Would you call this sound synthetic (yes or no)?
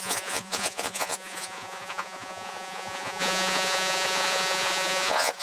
yes